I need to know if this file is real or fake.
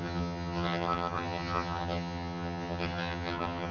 fake